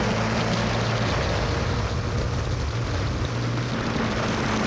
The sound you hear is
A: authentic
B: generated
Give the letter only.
A